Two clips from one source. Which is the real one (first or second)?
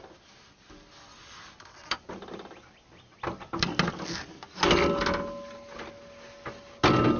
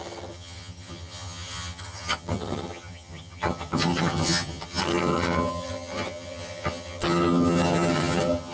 first